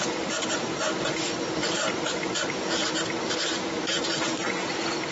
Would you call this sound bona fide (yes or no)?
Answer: no